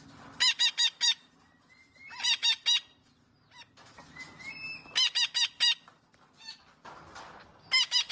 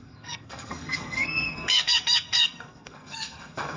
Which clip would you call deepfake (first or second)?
second